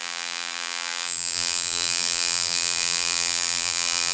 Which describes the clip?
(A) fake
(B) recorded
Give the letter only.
A